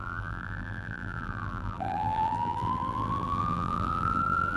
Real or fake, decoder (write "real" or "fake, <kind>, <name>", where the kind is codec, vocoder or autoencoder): fake, vocoder, BigVGAN v2